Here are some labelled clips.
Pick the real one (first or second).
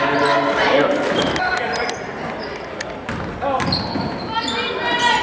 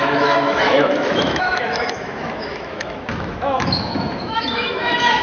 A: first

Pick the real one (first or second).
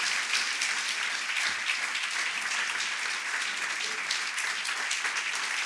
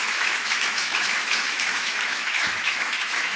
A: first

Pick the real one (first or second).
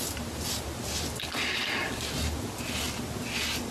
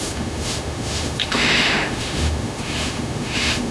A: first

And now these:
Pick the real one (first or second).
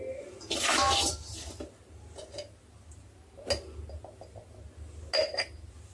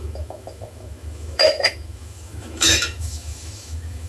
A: first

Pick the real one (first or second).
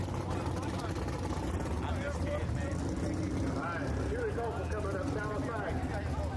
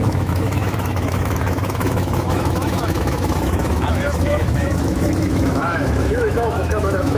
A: first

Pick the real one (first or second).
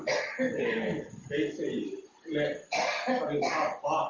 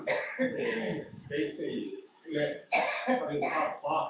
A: first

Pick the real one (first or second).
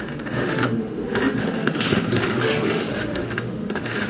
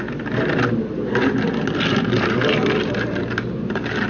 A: second